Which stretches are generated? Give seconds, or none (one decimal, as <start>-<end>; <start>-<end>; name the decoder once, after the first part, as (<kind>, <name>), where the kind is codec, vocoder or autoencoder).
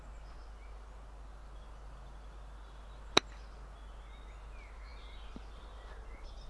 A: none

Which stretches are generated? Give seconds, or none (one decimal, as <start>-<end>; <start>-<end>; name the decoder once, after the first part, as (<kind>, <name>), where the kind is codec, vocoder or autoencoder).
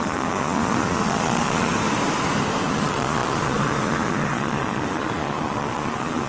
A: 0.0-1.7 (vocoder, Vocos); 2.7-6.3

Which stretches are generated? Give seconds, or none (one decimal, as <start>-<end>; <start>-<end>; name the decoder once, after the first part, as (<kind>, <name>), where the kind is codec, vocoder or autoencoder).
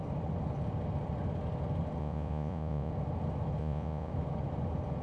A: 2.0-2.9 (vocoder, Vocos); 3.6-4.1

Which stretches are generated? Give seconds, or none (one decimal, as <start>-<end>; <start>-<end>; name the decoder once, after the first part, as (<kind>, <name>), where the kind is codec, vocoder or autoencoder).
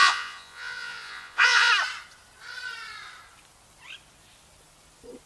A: 0.0-1.7 (vocoder, Vocos)